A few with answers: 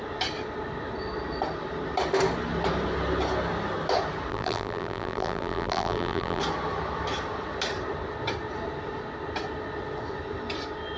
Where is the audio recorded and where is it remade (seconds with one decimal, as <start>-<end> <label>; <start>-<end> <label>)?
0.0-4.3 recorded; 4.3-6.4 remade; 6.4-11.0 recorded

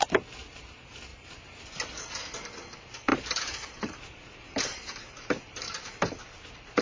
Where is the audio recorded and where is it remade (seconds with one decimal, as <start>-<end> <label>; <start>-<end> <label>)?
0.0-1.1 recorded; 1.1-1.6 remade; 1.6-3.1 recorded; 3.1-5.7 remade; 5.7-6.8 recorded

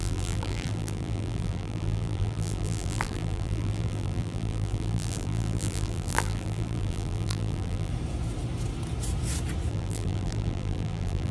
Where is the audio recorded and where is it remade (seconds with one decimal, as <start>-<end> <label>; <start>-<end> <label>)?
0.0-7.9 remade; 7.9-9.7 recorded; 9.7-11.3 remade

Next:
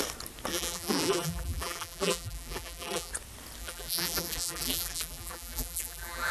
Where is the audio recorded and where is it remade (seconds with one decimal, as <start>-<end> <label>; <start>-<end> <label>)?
0.0-0.5 recorded; 0.5-3.1 remade; 3.1-3.6 recorded; 3.6-6.3 remade